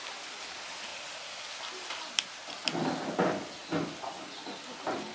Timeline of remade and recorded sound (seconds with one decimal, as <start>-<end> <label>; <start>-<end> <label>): 0.0-5.1 recorded